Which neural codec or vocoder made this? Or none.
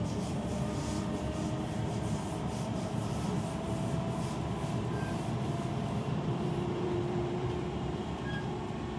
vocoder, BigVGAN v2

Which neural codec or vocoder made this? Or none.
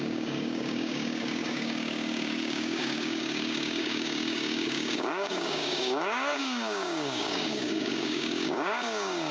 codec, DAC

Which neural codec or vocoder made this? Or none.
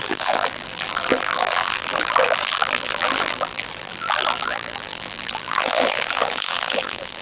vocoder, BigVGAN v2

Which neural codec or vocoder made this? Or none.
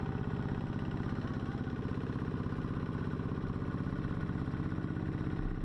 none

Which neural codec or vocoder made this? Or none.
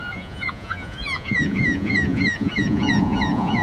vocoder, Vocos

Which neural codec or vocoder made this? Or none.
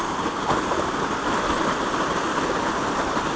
none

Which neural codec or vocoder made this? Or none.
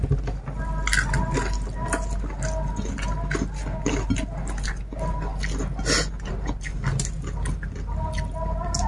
none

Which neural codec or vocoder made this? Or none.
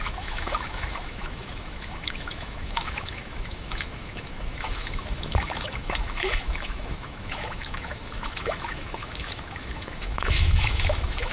autoencoder, DAC-VAE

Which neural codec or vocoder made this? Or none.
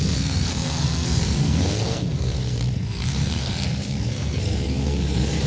codec, SNAC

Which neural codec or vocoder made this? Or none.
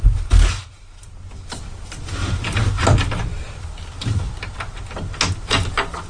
none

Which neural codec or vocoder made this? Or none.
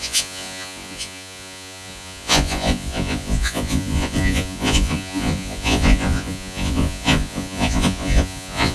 vocoder, Vocos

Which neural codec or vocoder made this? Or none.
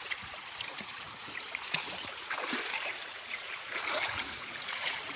vocoder, Vocos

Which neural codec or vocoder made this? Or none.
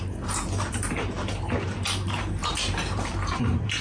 vocoder, BigVGAN v2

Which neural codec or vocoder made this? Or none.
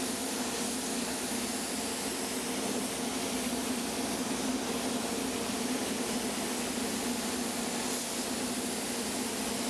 none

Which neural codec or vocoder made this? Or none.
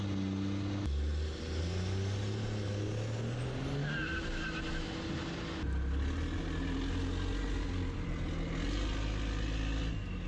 none